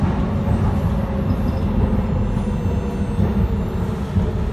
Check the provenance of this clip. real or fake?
real